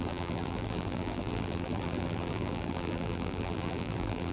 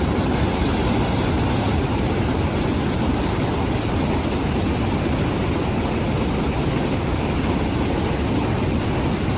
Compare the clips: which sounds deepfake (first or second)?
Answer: first